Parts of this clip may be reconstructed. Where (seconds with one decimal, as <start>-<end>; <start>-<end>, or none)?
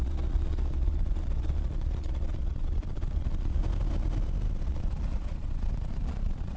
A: 0.0-3.6; 4.7-6.6